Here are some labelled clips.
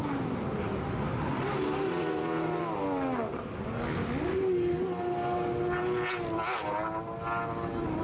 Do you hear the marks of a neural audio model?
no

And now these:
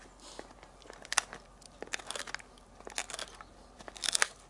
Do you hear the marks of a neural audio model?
no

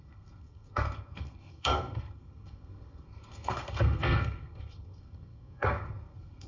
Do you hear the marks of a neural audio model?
yes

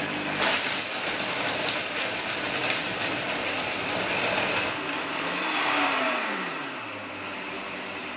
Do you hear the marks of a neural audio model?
no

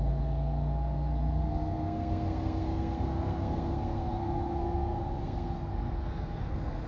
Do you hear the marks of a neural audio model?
yes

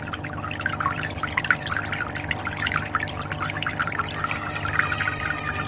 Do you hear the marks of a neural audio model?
yes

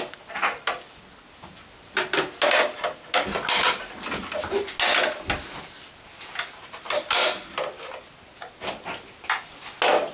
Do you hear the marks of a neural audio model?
no